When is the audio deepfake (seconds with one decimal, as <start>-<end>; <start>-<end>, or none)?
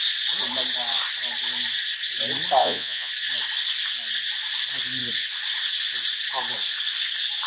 2.6-3.1